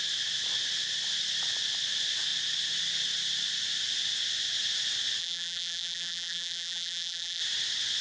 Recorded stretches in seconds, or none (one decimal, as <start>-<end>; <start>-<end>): 0.0-5.2; 7.4-8.0